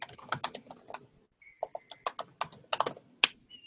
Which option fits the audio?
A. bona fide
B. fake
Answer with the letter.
A